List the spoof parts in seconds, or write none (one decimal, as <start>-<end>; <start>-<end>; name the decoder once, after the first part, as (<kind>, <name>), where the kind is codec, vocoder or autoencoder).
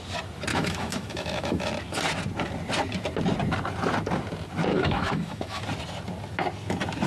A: 0.5-1.7 (autoencoder, DAC-VAE); 4.7-5.6